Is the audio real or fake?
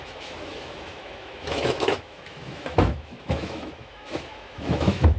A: fake